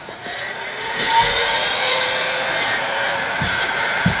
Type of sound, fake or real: fake